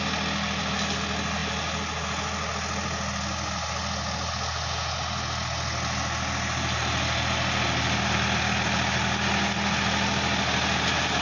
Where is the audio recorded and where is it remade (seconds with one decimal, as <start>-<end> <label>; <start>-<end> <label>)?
0.0-11.2 recorded